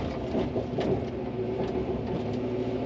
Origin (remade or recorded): recorded